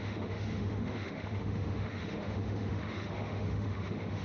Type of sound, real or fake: fake